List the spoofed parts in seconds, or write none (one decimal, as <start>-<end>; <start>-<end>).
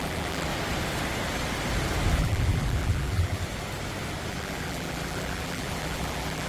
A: 0.0-0.5; 2.1-3.4; 4.3-6.5